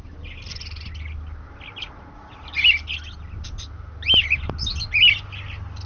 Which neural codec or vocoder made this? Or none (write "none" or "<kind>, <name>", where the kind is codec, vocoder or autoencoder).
none